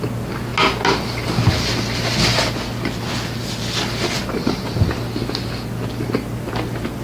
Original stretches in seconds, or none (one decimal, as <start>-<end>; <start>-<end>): 0.0-7.0